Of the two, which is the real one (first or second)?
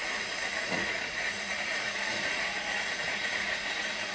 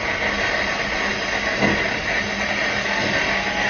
second